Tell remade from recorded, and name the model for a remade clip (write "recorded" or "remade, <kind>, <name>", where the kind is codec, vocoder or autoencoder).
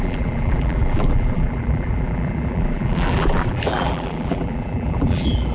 remade, vocoder, BigVGAN v2